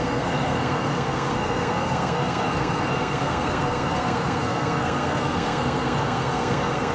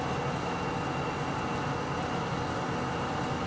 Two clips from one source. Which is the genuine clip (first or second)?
second